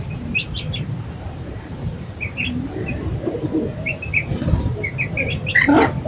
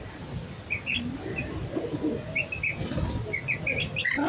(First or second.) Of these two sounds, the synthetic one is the first